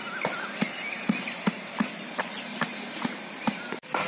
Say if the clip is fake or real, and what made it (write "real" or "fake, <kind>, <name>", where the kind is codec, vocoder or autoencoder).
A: real